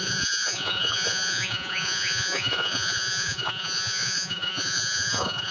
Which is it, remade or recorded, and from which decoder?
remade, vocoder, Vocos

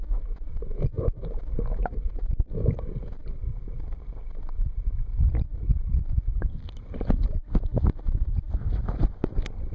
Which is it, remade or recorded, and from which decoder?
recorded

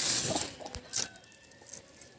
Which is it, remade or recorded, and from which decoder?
recorded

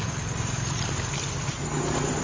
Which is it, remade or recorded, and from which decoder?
remade, vocoder, BigVGAN v2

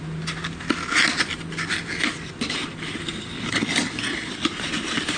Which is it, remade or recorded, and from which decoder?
recorded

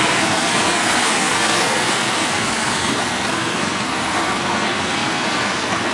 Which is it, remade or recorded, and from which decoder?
remade, codec, SNAC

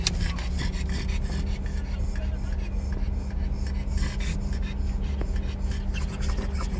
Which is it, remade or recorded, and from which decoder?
recorded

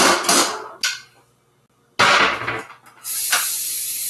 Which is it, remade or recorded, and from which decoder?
recorded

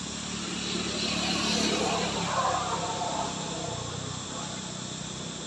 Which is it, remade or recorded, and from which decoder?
recorded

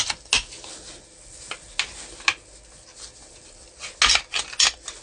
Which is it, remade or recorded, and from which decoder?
recorded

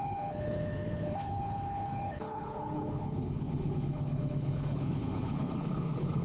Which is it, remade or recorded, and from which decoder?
remade, codec, HILCodec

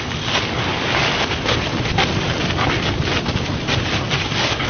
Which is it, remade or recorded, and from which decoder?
recorded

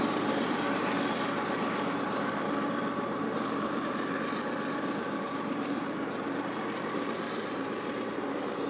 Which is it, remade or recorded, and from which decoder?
remade, vocoder, BigVGAN v2